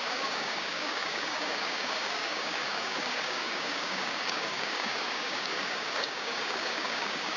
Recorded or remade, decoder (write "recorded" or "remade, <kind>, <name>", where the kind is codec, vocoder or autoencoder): remade, codec, DAC